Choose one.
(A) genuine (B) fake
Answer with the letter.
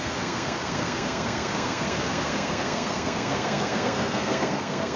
B